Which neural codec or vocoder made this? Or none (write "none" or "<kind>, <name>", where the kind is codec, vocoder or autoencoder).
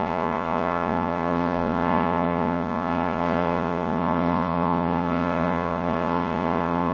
vocoder, Vocos